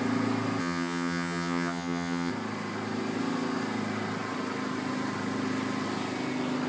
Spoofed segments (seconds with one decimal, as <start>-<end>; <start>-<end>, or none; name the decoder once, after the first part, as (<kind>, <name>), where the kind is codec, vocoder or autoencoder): 0.6-2.3 (vocoder, HiFi-GAN)